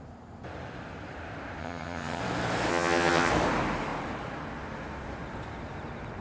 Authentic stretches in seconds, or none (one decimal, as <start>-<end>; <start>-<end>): 0.0-1.6; 2.2-2.7; 3.3-6.2